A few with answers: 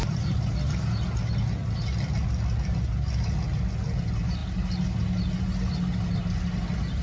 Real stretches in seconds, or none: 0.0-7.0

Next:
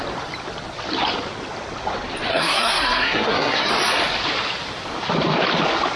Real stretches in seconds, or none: 0.0-2.3; 3.7-6.0

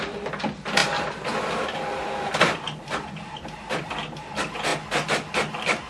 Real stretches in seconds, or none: 0.0-5.9

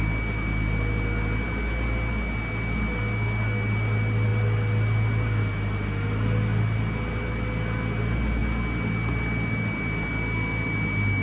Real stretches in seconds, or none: 0.0-11.2

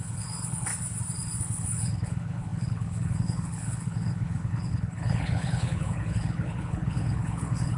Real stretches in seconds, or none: 0.7-1.4